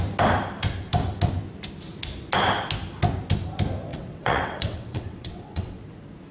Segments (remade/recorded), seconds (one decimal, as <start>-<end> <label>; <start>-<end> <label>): 0.0-3.9 recorded; 3.9-5.8 remade; 5.8-6.3 recorded

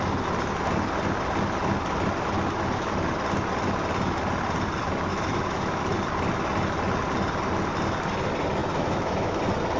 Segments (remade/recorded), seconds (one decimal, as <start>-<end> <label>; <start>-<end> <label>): 0.0-5.1 recorded; 5.1-5.8 remade; 5.8-8.6 recorded; 8.6-9.4 remade; 9.4-9.8 recorded

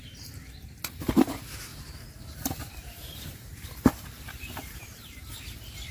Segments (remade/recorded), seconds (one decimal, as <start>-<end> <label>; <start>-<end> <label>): 0.0-1.7 recorded; 1.7-5.2 remade; 5.2-5.9 recorded

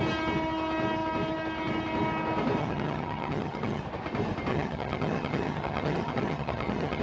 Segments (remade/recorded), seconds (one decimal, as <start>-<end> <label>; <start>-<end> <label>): 0.0-2.6 recorded; 2.6-3.8 remade; 3.8-4.5 recorded; 4.5-7.0 remade

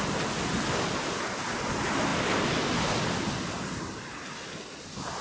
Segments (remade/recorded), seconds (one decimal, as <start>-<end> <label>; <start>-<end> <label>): 0.0-5.2 recorded